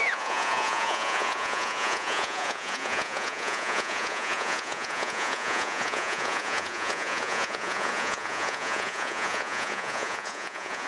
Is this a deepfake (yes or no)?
yes